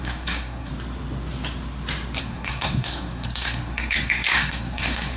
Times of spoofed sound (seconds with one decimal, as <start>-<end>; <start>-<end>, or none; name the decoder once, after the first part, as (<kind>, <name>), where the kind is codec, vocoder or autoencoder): 0.0-0.7 (codec, SNAC); 2.2-5.2